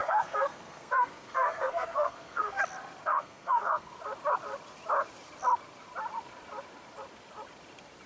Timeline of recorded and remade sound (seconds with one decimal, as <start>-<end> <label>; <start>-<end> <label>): 0.0-2.6 remade; 2.6-3.0 recorded; 3.0-3.9 remade; 3.9-8.1 recorded